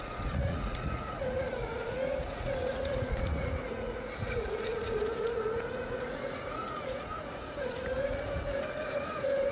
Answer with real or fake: fake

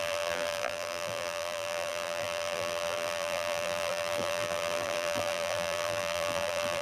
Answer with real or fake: fake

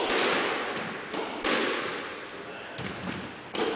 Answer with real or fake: real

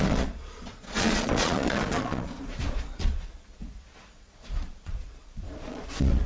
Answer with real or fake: fake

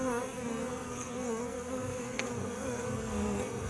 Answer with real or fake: fake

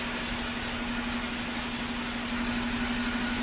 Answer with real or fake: real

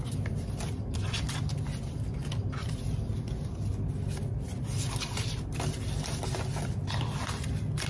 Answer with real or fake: real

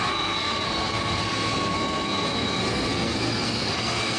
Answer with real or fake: fake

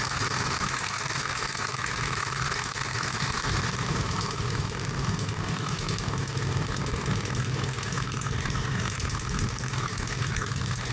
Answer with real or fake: fake